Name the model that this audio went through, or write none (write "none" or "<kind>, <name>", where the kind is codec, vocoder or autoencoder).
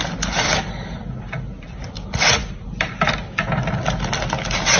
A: none